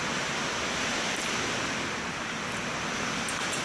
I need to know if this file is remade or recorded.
recorded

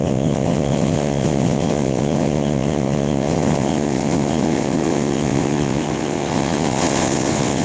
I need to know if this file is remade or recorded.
remade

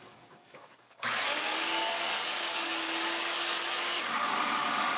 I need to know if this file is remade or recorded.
remade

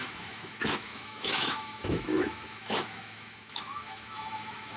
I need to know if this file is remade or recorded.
remade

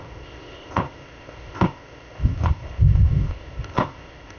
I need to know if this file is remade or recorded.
remade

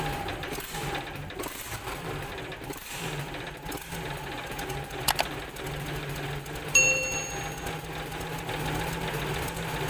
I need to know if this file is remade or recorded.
recorded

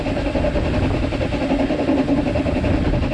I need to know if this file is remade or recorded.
recorded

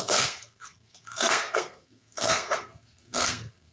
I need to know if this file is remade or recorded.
remade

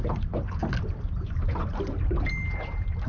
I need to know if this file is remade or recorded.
recorded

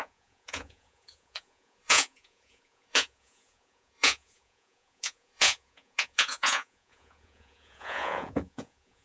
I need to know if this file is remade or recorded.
remade